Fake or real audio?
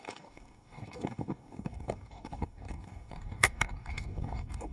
fake